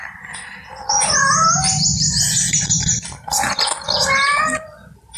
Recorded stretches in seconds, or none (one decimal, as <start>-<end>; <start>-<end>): 0.0-5.2